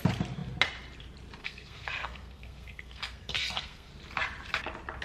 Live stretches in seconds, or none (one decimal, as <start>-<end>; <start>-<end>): 0.0-1.4; 3.9-5.0